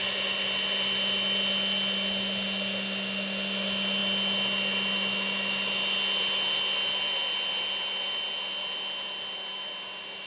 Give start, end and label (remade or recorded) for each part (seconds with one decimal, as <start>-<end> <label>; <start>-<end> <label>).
0.0-10.3 recorded